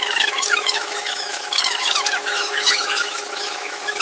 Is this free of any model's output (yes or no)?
no